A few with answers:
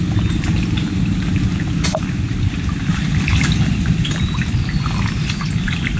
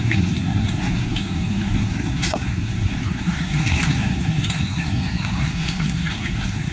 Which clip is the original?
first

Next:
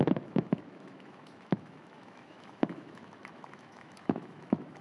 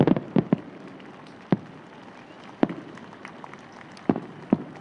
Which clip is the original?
second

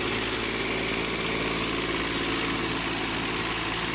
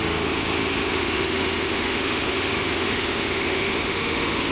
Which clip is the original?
first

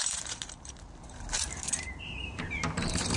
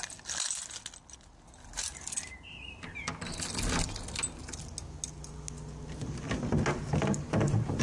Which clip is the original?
second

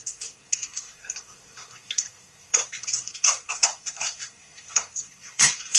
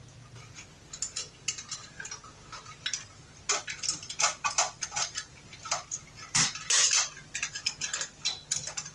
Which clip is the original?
second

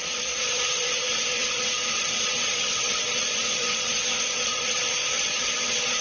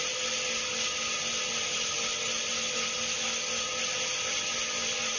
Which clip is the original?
second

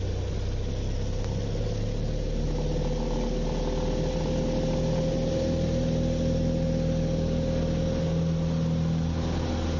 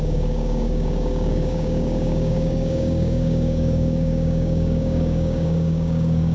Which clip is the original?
first